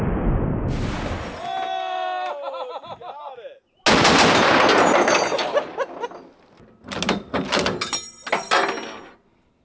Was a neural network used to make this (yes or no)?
no